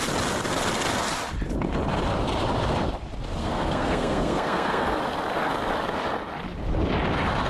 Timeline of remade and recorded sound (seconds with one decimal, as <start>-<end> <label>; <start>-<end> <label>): 0.0-3.4 recorded; 3.4-5.0 remade; 5.0-7.5 recorded